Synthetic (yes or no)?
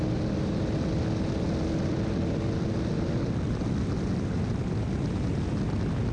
no